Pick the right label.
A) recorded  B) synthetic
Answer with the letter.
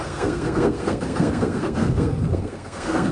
B